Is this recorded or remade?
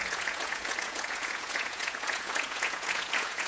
remade